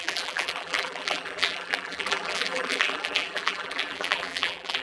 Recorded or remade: remade